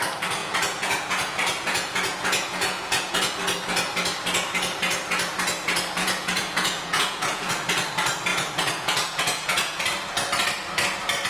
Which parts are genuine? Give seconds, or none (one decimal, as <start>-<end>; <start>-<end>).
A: 0.0-0.4; 3.3-6.0; 7.5-8.3; 9.8-11.3